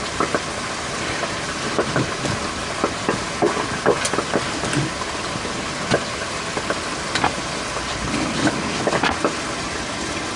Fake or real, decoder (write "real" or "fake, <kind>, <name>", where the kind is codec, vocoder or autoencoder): real